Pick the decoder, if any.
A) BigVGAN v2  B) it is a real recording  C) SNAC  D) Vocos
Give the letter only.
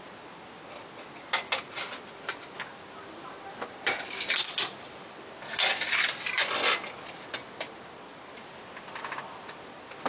B